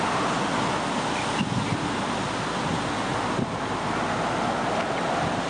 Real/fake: real